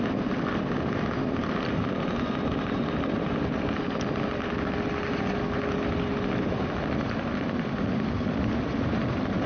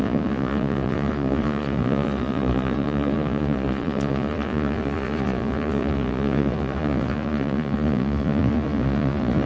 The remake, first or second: second